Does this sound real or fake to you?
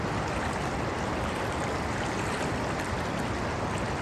real